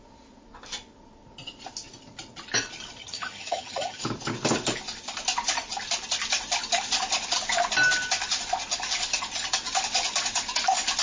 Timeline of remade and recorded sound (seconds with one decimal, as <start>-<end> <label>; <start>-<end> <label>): 0.0-3.0 recorded; 3.0-4.0 remade; 4.0-11.0 recorded